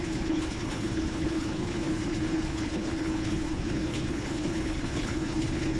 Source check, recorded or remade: remade